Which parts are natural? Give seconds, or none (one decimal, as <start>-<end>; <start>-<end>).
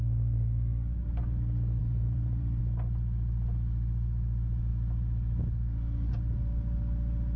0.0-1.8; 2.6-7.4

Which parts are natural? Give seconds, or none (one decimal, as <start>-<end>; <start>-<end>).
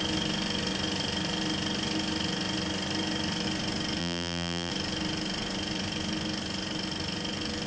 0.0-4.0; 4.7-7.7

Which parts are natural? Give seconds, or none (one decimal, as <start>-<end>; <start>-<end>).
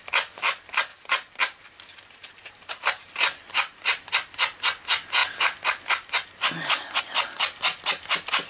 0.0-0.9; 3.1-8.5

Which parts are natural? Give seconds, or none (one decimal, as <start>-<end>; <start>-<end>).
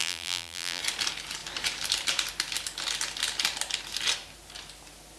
0.8-5.2